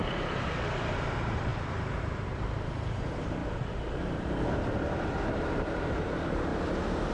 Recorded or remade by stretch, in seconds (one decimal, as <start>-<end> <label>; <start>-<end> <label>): 0.0-6.5 remade; 6.5-7.1 recorded